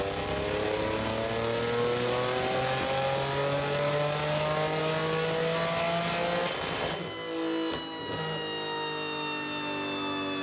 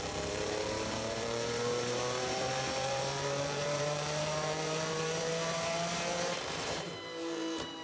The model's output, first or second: second